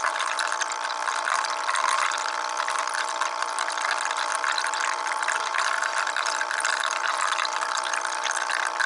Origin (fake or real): real